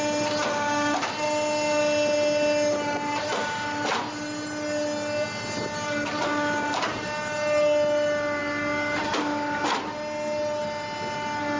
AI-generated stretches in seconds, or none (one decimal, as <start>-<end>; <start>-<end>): none